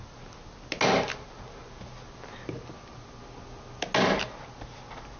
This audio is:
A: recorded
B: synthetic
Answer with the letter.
A